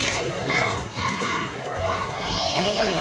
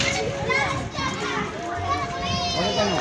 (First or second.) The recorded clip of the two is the second